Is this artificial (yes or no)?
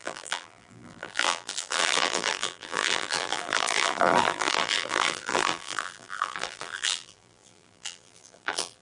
yes